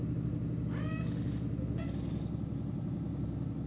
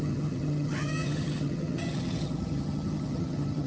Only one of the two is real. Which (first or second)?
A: first